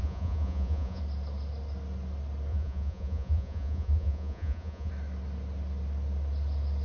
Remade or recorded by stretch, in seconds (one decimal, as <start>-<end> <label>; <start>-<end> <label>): 0.0-1.0 remade; 1.0-2.5 recorded; 2.5-4.9 remade; 4.9-6.8 recorded

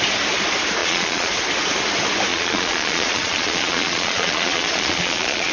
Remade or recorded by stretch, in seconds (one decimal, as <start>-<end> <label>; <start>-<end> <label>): 0.0-0.8 recorded; 0.8-1.3 remade; 1.3-2.3 recorded; 2.3-5.5 remade

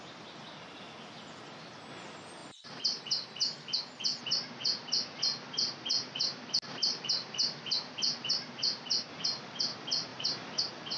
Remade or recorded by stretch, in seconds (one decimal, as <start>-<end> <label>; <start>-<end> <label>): 0.0-11.0 recorded

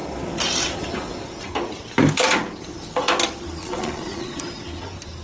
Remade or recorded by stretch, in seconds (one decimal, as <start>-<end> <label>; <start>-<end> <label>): 0.0-3.6 recorded; 3.6-4.4 remade; 4.4-5.2 recorded

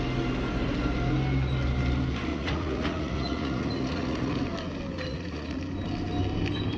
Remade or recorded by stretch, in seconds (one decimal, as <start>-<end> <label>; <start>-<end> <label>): 0.0-2.3 recorded; 2.3-4.4 remade; 4.4-5.1 recorded; 5.1-5.6 remade; 5.6-6.8 recorded